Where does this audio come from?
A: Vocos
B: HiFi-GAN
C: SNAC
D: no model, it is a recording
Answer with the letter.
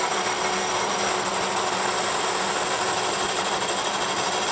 D